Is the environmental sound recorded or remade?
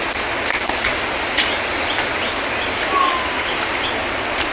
recorded